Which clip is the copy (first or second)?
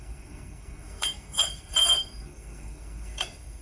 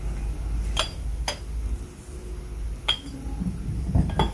first